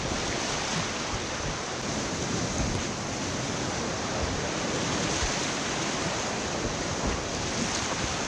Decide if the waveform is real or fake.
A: real